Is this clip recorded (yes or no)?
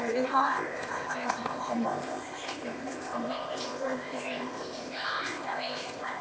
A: no